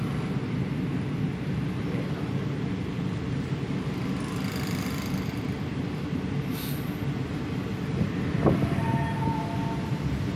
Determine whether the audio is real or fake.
real